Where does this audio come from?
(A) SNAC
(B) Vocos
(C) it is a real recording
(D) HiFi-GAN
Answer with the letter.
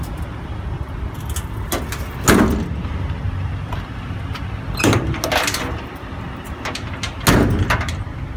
C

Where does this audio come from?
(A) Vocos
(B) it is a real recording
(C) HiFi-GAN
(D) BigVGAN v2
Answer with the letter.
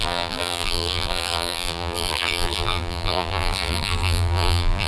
D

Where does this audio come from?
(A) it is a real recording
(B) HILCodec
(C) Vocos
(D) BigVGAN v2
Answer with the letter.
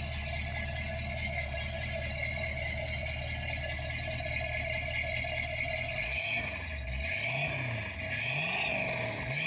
A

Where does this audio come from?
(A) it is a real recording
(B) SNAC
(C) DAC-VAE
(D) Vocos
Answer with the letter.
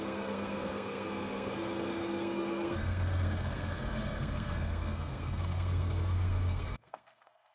B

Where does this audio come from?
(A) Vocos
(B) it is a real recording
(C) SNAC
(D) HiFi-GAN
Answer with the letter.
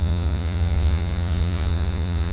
A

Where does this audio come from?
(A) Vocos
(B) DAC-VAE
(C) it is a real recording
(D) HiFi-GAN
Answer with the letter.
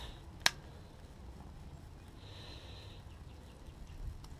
C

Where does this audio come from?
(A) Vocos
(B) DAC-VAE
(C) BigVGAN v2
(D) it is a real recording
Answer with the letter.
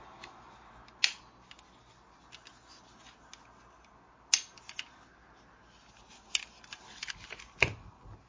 D